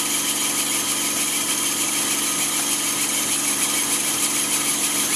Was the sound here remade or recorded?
recorded